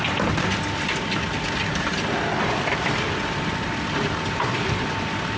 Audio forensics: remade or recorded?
recorded